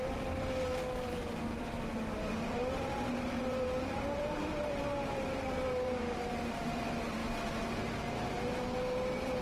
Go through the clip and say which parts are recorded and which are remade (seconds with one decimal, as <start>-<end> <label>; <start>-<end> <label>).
0.0-7.2 remade; 7.2-8.0 recorded; 8.0-9.4 remade